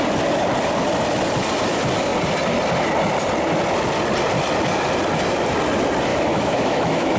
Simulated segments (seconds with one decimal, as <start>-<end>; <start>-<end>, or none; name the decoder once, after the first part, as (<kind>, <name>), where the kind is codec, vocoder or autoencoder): 6.1-7.2 (autoencoder, DAC-VAE)

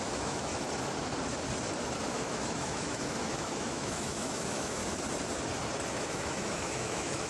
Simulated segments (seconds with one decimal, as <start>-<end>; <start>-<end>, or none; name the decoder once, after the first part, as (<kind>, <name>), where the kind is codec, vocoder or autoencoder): 0.0-0.5 (autoencoder, DAC-VAE); 2.1-4.8; 5.9-7.3

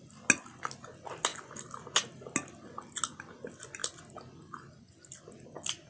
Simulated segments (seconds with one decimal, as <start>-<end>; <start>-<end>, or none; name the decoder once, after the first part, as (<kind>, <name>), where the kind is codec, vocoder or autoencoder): none

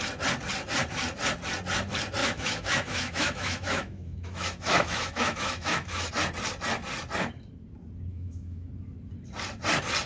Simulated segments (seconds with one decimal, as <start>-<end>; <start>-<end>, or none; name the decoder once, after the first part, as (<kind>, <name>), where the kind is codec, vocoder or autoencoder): 2.2-6.1 (autoencoder, DAC-VAE); 8.1-8.7

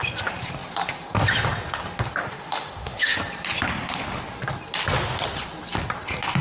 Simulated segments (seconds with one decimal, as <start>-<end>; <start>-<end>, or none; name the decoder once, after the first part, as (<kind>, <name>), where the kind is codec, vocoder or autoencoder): 2.2-3.2 (autoencoder, DAC-VAE)

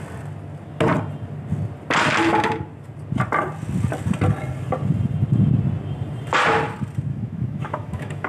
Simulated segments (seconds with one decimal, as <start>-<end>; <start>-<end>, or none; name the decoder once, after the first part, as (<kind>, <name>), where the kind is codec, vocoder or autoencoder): 7.1-8.3 (autoencoder, DAC-VAE)

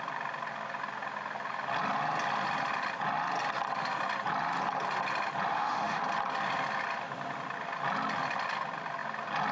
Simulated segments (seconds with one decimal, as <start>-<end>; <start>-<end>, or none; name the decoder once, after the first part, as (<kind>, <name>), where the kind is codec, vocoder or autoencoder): 5.5-6.0 (autoencoder, DAC-VAE)